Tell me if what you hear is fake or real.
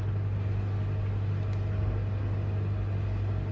real